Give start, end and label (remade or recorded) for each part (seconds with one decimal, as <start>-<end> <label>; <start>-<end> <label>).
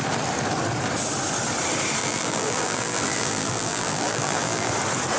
0.0-2.0 recorded; 2.0-4.7 remade; 4.7-5.2 recorded